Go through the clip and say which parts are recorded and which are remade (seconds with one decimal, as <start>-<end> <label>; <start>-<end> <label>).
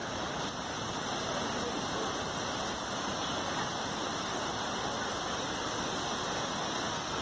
0.0-1.7 remade; 1.7-7.2 recorded